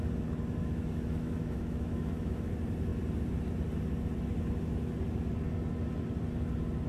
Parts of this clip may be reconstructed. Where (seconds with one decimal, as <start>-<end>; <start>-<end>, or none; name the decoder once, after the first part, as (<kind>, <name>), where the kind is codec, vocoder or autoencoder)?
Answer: 0.6-2.5 (autoencoder, DAC-VAE)